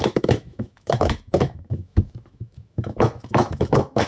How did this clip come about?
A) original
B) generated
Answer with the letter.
B